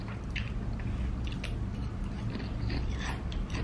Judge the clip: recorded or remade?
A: recorded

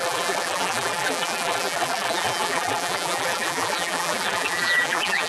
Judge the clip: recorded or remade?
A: remade